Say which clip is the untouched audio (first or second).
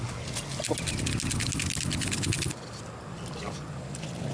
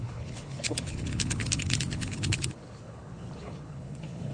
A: first